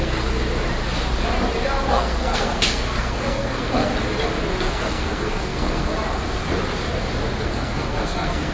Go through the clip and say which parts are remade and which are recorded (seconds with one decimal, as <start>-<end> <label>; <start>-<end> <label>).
0.0-0.4 remade; 0.4-1.9 recorded; 1.9-3.9 remade; 3.9-4.7 recorded; 4.7-5.9 remade; 5.9-7.4 recorded; 7.4-8.5 remade